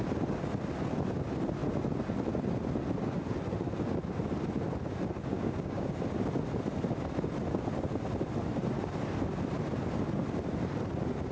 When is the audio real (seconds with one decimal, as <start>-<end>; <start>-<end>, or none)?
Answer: 0.0-5.3; 5.9-11.3